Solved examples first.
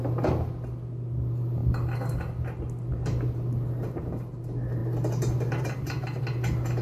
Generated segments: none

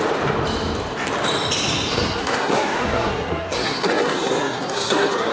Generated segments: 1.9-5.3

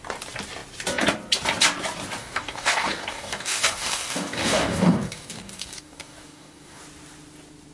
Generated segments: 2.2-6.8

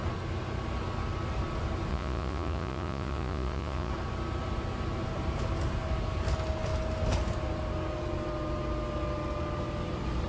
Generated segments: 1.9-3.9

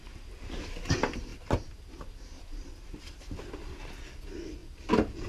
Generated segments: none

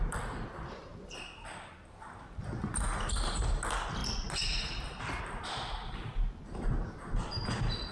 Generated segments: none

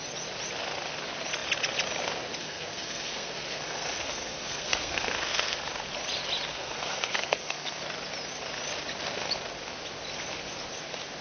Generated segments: 2.4-5.6; 6.5-7.8